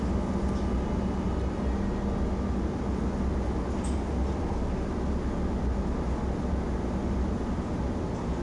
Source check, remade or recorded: recorded